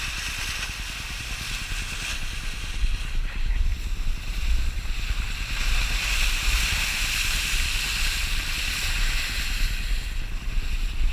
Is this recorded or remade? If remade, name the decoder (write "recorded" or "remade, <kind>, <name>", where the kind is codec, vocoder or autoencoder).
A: recorded